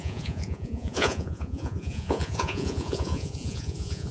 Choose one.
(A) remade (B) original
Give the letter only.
A